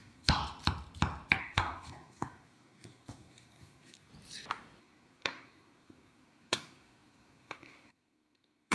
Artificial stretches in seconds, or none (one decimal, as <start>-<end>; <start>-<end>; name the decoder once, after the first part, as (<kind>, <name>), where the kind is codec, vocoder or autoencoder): 0.0-0.4 (codec, SNAC); 1.4-4.1; 4.8-8.7

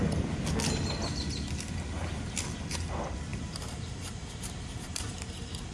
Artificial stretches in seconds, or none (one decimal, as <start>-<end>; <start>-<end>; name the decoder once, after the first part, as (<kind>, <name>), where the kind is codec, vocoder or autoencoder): 3.3-5.3 (vocoder, BigVGAN v2)